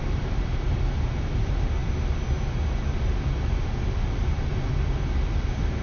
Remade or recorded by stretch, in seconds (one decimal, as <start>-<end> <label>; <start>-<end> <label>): 0.0-1.8 remade; 1.8-3.5 recorded; 3.5-4.5 remade; 4.5-5.8 recorded